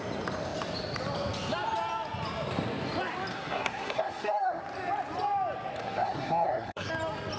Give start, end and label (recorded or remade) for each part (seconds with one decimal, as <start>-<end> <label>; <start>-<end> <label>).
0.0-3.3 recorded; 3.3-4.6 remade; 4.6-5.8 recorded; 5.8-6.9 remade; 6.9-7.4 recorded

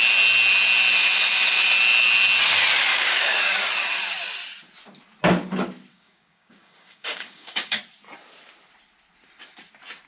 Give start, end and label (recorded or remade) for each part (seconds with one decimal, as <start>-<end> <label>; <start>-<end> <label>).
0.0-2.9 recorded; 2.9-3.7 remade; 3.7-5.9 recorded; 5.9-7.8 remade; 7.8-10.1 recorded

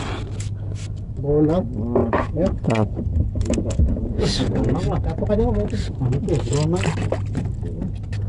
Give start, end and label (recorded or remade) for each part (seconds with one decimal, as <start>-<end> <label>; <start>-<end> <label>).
0.0-2.0 recorded; 2.0-5.3 remade; 5.3-8.3 recorded

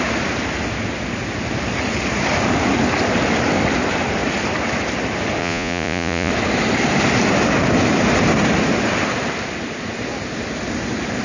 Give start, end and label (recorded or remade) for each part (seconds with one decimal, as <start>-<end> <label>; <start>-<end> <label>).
0.0-5.4 recorded; 5.4-6.3 remade; 6.3-11.2 recorded

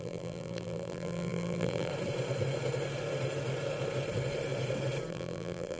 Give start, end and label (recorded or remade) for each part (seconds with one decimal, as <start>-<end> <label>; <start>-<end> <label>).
0.0-1.9 remade; 1.9-5.1 recorded; 5.1-5.8 remade

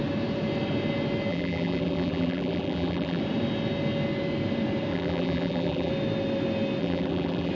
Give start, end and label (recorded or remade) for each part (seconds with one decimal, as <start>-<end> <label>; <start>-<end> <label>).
0.0-1.3 recorded; 1.3-3.2 remade; 3.2-4.9 recorded; 4.9-5.9 remade; 5.9-6.8 recorded; 6.8-7.5 remade

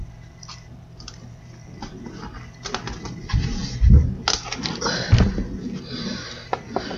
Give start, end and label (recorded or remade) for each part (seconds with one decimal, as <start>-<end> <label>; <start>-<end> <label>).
0.0-1.9 remade; 1.9-7.0 recorded